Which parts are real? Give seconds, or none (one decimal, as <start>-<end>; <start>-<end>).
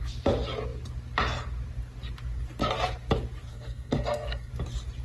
0.0-3.5; 4.5-5.0